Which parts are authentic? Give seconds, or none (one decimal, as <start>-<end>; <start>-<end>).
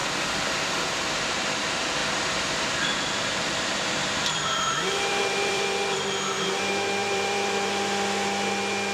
0.6-2.0; 6.1-7.0; 7.8-8.9